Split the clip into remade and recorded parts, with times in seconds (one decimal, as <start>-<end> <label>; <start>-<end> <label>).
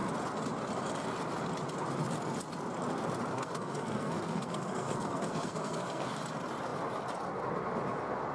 0.0-3.3 recorded; 3.3-6.2 remade; 6.2-8.3 recorded